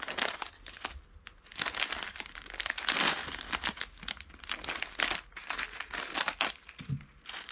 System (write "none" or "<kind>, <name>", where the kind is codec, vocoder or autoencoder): none